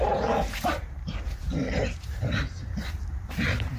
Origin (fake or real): fake